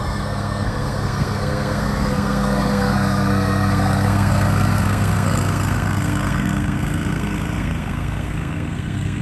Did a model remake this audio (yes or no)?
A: yes